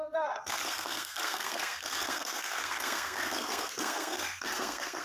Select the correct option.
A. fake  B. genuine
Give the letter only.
A